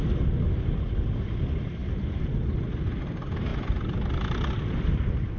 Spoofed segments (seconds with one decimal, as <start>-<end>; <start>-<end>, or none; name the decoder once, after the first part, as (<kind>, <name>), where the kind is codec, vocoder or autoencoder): none